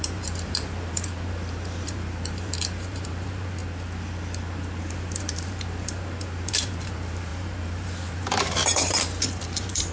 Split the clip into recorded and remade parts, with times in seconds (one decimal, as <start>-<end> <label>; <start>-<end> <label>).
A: 0.0-3.6 remade; 3.6-4.8 recorded; 4.8-9.9 remade